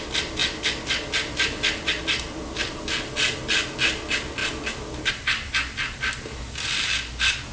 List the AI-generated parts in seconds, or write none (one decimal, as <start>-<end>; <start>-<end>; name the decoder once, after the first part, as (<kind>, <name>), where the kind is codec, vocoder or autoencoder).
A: none